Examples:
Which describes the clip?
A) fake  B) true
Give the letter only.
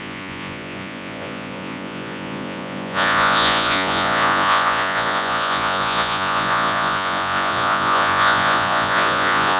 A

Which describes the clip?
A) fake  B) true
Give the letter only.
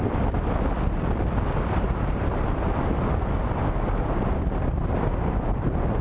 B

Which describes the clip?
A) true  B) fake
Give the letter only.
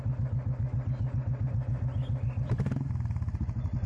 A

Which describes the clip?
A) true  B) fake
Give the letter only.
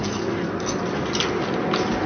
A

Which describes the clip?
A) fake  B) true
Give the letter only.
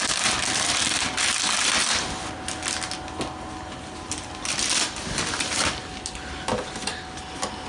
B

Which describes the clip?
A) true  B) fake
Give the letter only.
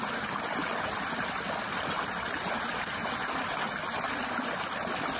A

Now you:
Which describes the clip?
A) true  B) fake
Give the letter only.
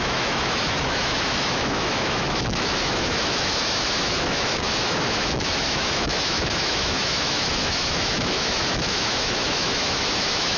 B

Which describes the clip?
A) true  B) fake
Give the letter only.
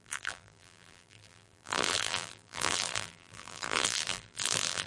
B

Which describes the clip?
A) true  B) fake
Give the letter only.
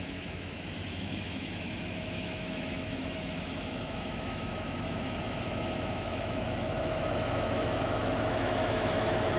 B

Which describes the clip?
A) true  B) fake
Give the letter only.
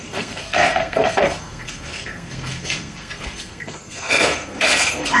B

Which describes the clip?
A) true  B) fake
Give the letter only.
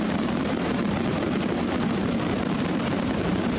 B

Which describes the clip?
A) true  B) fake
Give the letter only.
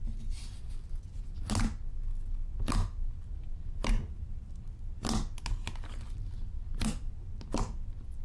A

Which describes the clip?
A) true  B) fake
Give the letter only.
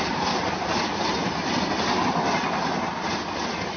A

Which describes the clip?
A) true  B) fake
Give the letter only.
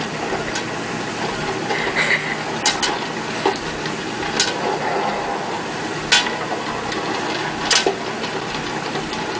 A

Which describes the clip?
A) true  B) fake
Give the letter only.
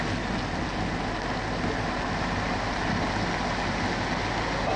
A